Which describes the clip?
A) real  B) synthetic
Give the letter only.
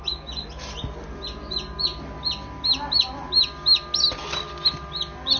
A